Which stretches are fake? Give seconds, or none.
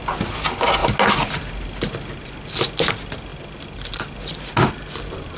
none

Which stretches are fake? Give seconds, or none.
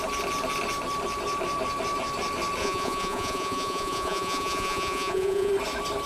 2.6-5.5 (vocoder, Vocos)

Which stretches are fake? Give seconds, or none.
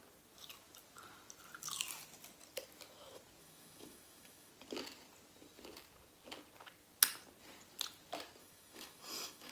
3.4-4.5 (autoencoder, DAC-VAE); 8.4-9.5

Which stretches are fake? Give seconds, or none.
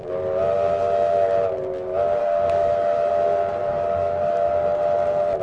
2.2-3.1 (codec, DAC); 3.6-4.5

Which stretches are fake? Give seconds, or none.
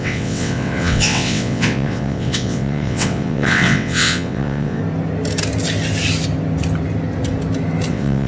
0.0-4.8 (vocoder, WaveNeXt); 7.9-8.3